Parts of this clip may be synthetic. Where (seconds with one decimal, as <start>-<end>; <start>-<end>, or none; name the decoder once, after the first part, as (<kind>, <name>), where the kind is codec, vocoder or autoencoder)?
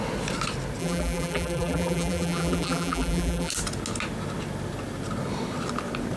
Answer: 0.8-3.5 (vocoder, BigVGAN v2)